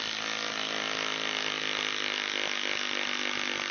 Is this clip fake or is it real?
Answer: real